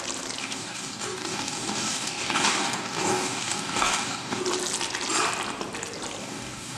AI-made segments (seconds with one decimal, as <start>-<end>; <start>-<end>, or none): 0.4-4.4; 6.2-6.8